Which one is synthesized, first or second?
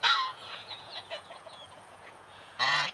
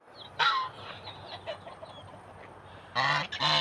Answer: first